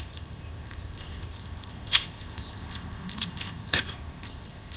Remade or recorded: remade